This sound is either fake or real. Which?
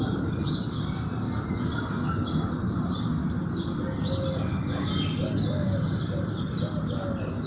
real